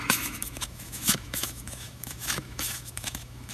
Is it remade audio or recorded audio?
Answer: remade